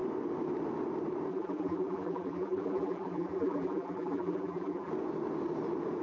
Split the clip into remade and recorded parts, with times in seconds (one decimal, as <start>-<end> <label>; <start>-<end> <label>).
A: 0.0-1.3 recorded; 1.3-4.9 remade; 4.9-6.0 recorded